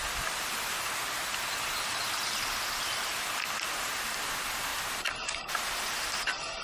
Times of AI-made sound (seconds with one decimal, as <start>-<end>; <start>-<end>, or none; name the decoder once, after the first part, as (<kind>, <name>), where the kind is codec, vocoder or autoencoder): 0.0-4.7 (vocoder, BigVGAN v2); 6.0-6.6